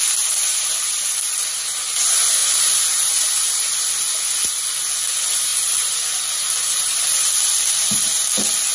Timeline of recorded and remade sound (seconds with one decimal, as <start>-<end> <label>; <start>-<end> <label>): 0.0-2.4 recorded; 2.4-3.8 remade; 3.8-8.7 recorded